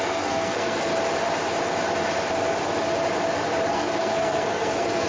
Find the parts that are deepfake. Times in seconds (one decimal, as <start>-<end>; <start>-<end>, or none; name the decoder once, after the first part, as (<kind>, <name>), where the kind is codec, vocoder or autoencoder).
0.0-0.9 (codec, SNAC); 3.7-5.1

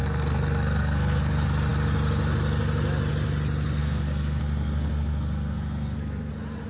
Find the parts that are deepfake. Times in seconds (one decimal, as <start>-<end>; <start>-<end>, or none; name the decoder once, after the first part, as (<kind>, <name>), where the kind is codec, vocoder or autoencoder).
0.0-1.2 (codec, SNAC); 3.8-6.3

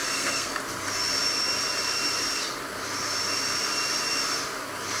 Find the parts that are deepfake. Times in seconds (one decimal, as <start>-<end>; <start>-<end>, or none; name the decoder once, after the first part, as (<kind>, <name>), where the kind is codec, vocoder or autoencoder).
0.0-0.6 (codec, SNAC)

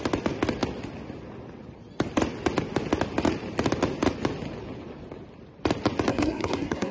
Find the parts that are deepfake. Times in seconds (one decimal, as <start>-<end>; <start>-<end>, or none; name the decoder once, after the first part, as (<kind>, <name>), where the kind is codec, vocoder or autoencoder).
6.1-6.9 (codec, SNAC)

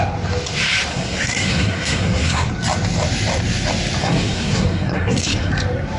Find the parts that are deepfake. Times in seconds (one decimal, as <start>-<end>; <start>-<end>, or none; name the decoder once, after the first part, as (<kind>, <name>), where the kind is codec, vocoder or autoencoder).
0.9-2.5 (codec, SNAC); 4.0-5.5

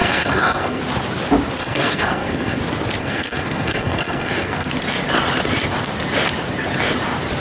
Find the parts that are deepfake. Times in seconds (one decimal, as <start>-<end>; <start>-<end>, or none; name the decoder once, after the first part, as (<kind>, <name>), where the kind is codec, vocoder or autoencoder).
0.0-0.8 (codec, SNAC); 1.6-2.6; 3.0-4.7

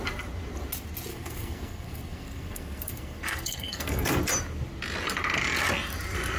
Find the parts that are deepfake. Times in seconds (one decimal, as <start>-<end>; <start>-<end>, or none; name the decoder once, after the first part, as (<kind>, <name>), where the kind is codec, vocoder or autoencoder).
1.1-4.2 (codec, SNAC)

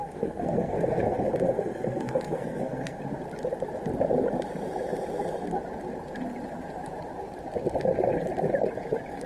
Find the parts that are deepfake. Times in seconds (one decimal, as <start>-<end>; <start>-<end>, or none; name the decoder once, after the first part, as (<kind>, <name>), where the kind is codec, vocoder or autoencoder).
0.0-3.0 (codec, SNAC)